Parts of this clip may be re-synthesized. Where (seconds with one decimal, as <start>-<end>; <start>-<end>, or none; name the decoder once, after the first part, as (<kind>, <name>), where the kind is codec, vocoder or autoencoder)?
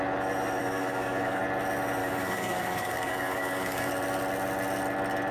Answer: 0.6-1.4 (codec, DAC); 2.0-3.9